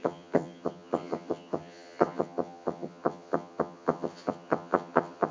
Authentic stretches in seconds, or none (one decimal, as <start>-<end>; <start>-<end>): none